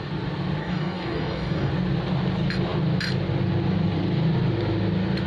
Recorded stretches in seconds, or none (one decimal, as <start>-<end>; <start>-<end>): 0.0-0.6; 1.7-5.3

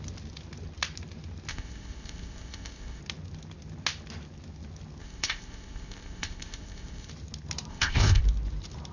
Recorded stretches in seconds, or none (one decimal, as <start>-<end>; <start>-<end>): 0.0-1.5; 3.0-5.0; 7.1-7.7; 8.2-8.9

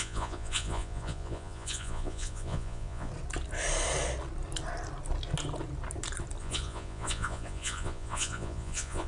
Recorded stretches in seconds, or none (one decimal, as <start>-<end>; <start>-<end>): 3.1-6.4

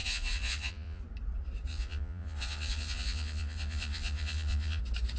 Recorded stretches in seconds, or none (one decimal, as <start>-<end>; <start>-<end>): 1.0-1.7; 4.8-5.2

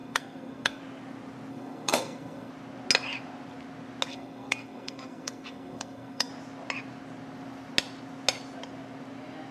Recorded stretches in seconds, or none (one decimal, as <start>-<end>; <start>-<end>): 0.8-1.5; 2.5-4.1; 6.3-9.5

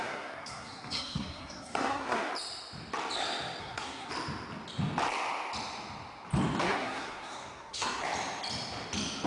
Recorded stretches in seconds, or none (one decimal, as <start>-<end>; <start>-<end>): 2.3-3.6; 4.1-6.6; 8.0-9.3

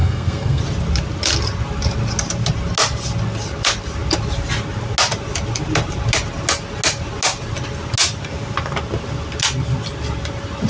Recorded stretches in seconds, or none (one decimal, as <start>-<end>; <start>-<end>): 0.6-10.7

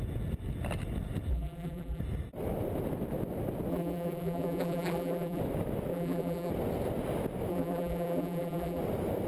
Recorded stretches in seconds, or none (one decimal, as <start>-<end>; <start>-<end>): 0.0-1.3; 2.0-3.7; 5.4-5.9; 6.5-7.5; 8.8-9.3